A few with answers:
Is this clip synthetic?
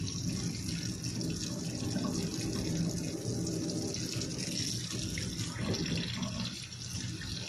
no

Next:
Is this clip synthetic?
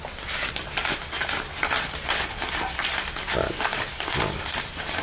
no